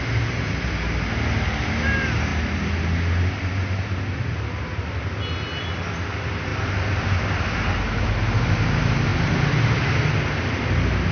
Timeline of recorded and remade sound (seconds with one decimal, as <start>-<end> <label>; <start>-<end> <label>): 0.0-11.1 recorded